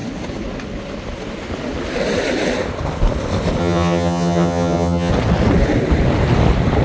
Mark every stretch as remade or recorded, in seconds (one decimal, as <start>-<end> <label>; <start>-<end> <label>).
0.0-3.6 recorded; 3.6-5.1 remade; 5.1-6.8 recorded